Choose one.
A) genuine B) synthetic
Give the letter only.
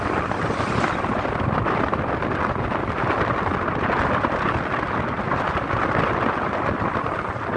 A